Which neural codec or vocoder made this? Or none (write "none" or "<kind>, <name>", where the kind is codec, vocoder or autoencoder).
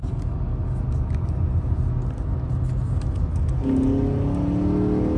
none